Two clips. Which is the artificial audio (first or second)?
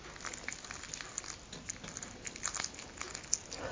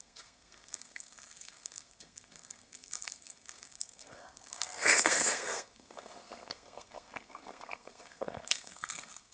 second